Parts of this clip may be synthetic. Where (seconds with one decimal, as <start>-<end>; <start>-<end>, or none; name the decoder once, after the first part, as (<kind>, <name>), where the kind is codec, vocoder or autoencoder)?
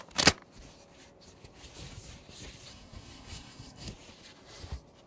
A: 2.7-3.9 (codec, SNAC)